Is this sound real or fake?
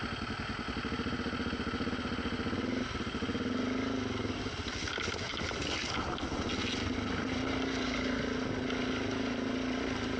real